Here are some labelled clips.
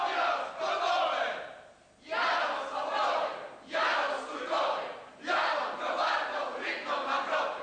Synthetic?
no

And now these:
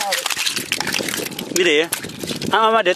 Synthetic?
no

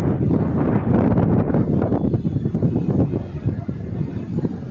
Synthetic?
no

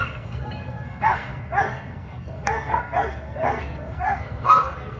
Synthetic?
yes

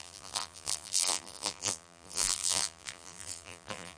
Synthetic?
yes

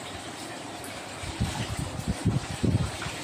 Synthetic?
yes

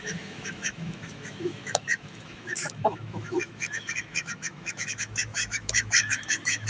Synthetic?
yes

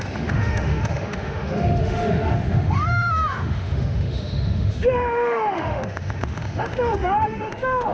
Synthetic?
yes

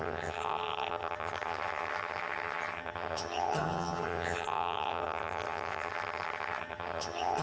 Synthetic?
yes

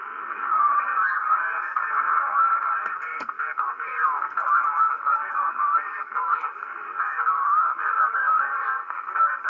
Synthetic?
yes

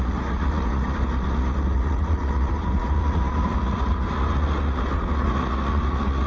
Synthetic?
yes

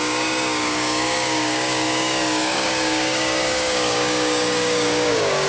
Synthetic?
yes